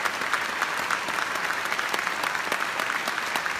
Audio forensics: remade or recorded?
recorded